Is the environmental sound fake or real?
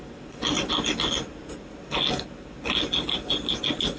real